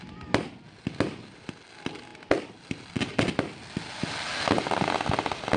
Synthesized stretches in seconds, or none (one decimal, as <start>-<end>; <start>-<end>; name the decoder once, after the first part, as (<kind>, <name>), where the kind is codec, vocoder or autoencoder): none